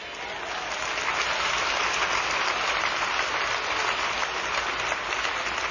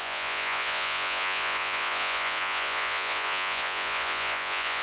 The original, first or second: first